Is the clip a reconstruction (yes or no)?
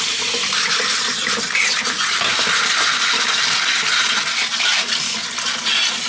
no